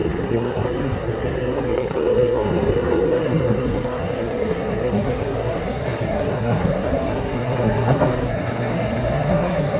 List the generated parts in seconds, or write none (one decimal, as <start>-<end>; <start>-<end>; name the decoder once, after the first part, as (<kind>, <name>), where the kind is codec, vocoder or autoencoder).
0.0-9.8 (codec, SNAC)